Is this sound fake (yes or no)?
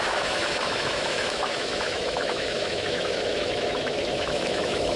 yes